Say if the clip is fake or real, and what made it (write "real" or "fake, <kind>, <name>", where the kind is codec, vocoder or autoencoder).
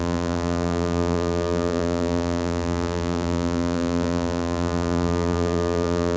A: fake, vocoder, BigVGAN v2